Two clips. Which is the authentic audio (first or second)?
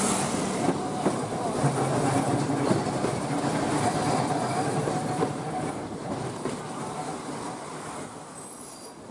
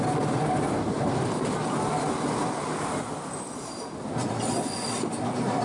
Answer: second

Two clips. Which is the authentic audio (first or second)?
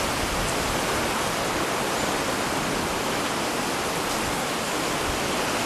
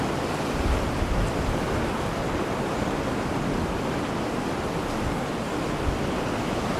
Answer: first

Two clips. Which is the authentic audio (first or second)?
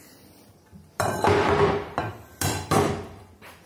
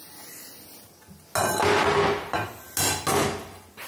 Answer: second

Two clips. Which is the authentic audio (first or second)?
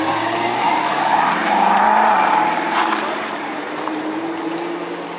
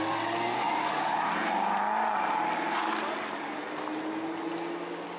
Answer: second